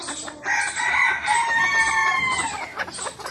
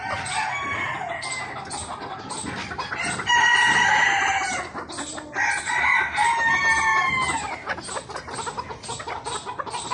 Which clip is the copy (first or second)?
first